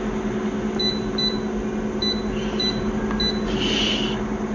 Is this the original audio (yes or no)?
yes